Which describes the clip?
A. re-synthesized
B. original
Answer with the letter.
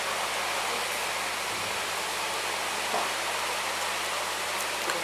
B